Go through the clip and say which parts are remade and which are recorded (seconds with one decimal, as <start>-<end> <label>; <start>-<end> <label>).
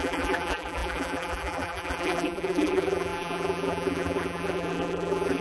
0.0-5.4 remade